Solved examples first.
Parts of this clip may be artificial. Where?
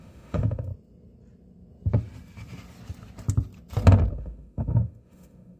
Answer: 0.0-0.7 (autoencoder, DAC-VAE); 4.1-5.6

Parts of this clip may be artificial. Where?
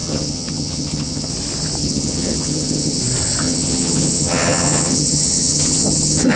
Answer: 0.0-1.3 (vocoder, HiFi-GAN); 1.8-3.0; 3.4-6.4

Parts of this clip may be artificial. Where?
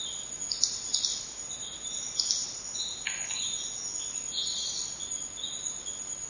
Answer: none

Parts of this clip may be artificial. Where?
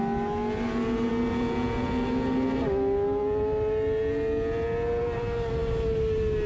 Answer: none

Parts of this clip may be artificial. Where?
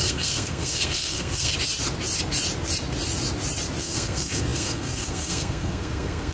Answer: 0.0-1.5 (codec, SNAC); 3.8-6.3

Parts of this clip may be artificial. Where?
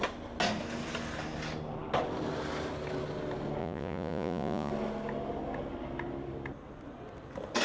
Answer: 3.6-4.7 (vocoder, Vocos)